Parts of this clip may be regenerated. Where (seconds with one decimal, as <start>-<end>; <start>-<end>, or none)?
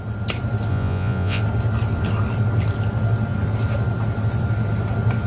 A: 0.7-1.4